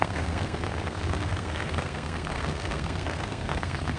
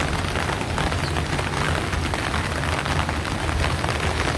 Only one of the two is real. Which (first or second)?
second